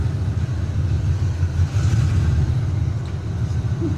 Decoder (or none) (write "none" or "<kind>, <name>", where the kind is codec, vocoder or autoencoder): vocoder, BigVGAN v2